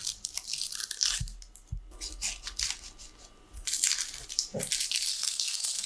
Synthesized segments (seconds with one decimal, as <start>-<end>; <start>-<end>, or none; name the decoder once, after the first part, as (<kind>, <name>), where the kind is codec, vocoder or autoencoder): 5.1-5.9 (codec, SNAC)